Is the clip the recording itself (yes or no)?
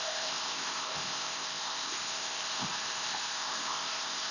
no